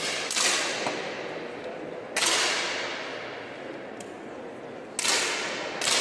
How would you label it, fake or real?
real